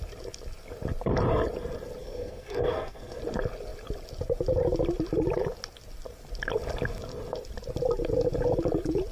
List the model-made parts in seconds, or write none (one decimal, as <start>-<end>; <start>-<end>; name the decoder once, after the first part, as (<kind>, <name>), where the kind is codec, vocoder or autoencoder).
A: 2.0-3.2 (codec, SNAC)